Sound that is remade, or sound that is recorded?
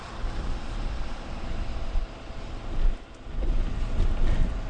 recorded